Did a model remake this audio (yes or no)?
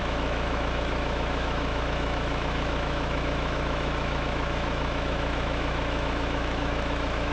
yes